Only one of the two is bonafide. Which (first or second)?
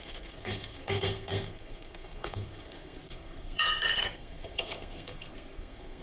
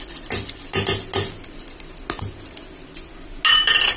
second